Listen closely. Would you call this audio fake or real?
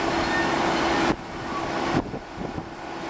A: real